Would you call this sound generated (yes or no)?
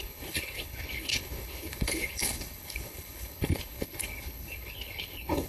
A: yes